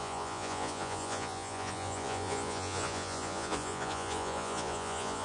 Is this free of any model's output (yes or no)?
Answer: no